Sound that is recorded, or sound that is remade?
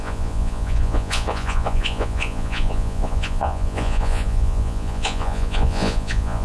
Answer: remade